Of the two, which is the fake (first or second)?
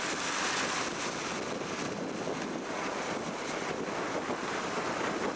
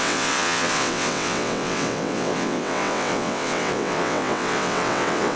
second